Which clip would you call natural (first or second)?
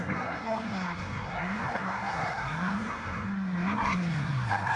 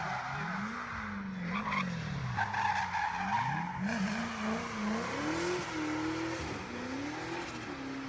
second